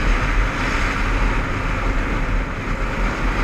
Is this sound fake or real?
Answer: real